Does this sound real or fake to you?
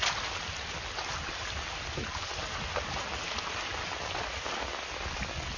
real